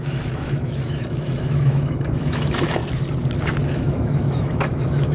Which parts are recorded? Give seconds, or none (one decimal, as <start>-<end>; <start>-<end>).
2.8-3.7